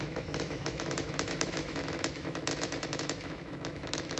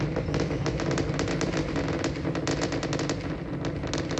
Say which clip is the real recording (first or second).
second